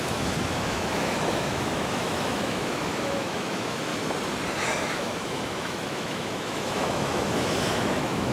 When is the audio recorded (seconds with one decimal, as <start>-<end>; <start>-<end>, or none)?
3.9-4.8